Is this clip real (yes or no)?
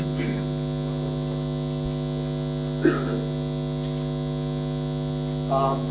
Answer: yes